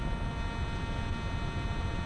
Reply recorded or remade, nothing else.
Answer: recorded